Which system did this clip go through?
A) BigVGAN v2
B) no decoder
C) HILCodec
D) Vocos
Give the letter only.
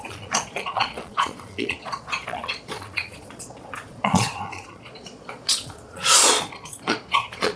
D